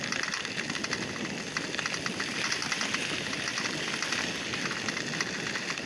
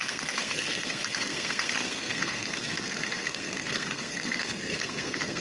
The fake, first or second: second